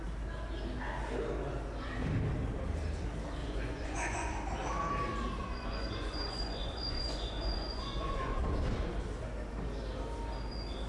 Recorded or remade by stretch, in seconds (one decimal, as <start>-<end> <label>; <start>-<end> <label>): 0.0-3.4 recorded; 3.4-4.3 remade; 4.3-5.4 recorded; 5.4-8.4 remade; 8.4-10.9 recorded